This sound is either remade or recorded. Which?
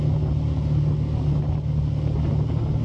recorded